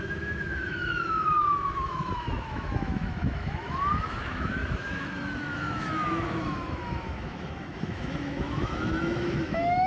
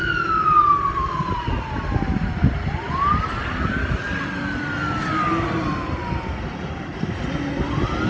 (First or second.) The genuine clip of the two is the second